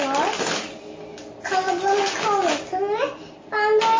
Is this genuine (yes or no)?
yes